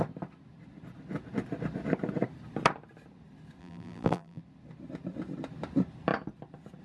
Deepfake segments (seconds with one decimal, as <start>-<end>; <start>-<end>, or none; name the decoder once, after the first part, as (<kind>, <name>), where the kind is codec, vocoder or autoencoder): 3.6-4.4 (vocoder, BigVGAN v2)